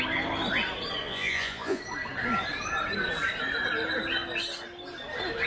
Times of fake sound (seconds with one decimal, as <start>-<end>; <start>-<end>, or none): 1.0-1.8

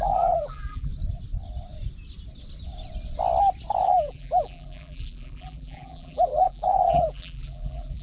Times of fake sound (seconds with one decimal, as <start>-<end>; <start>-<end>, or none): 0.0-0.9; 3.8-8.0

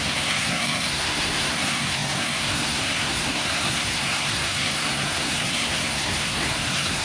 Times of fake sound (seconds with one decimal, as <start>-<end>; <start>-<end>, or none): 0.0-7.0

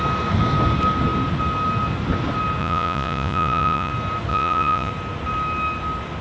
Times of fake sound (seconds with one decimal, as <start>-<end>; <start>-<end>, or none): 2.6-3.9; 4.3-4.9

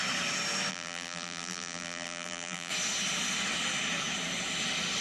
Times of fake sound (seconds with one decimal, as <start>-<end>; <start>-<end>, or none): 0.7-2.7